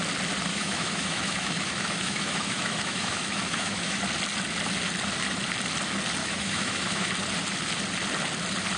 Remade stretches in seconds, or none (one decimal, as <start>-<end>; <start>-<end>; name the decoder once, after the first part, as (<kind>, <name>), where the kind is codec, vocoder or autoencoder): 0.5-4.0 (autoencoder, DAC-VAE); 6.2-7.1